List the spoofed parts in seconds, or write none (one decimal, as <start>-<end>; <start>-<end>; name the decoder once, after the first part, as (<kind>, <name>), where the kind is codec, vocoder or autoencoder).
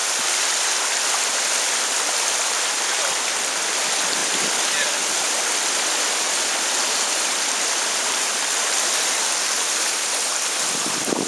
1.8-11.3 (vocoder, BigVGAN v2)